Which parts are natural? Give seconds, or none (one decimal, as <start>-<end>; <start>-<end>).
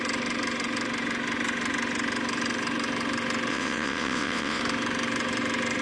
0.0-3.5; 4.6-5.8